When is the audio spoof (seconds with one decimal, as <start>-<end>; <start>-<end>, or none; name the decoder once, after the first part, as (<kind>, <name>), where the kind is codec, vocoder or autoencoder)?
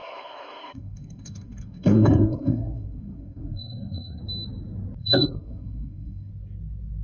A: 0.0-4.2 (codec, SNAC); 5.0-6.3